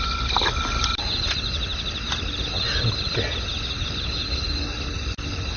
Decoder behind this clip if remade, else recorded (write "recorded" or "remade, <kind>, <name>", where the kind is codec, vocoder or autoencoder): recorded